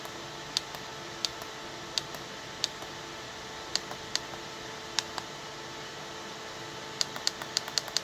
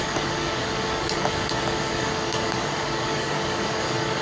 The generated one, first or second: second